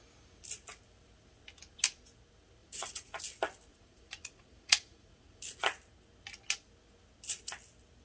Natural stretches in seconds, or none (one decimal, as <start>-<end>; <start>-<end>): 0.0-2.6; 3.2-3.7; 5.4-8.0